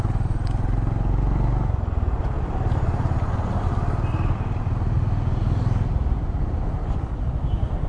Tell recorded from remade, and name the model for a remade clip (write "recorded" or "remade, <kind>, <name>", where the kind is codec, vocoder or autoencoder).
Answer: recorded